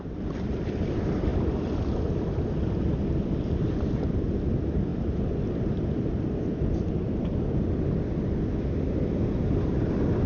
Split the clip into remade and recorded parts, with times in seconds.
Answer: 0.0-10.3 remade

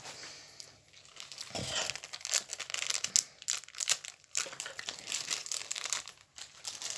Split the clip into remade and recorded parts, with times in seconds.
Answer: 0.0-7.0 recorded